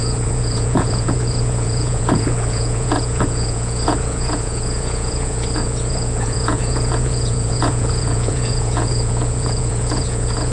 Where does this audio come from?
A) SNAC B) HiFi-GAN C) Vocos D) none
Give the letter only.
C